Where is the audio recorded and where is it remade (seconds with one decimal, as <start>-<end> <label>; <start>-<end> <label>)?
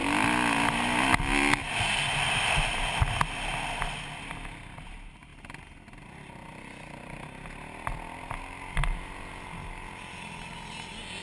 0.0-11.2 recorded